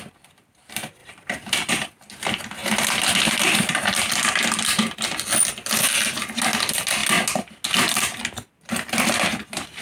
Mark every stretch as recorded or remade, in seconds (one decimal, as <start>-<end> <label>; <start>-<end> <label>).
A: 0.0-1.0 recorded; 1.0-1.7 remade; 1.7-9.8 recorded